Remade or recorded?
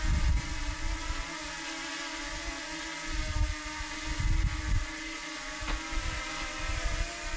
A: recorded